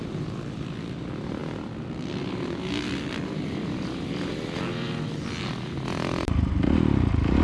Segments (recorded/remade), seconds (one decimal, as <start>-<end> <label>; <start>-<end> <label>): 0.0-1.4 remade; 1.4-3.5 recorded; 3.5-4.3 remade; 4.3-5.4 recorded; 5.4-7.4 remade